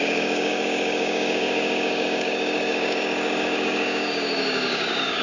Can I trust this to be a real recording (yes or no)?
no